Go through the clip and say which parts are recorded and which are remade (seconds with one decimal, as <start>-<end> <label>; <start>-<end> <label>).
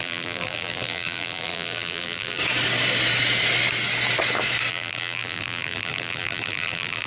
0.0-2.4 remade; 2.4-4.7 recorded; 4.7-7.1 remade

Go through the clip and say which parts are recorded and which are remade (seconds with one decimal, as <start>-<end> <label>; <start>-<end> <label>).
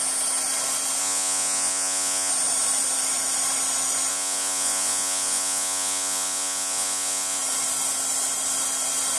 0.0-1.0 recorded; 1.0-2.3 remade; 2.3-4.1 recorded; 4.1-7.4 remade; 7.4-9.2 recorded